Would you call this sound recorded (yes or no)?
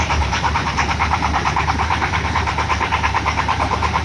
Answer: no